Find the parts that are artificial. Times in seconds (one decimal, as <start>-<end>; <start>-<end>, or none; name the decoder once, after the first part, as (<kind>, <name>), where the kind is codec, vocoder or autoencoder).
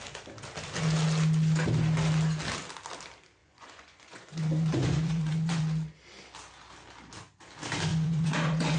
3.4-5.6 (vocoder, Vocos); 7.9-8.8